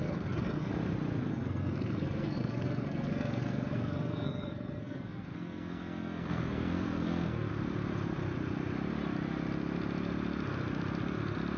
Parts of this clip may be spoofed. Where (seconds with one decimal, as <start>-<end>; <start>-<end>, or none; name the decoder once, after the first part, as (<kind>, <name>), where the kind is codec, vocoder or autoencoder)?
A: 0.0-0.7 (codec, SNAC); 1.3-7.5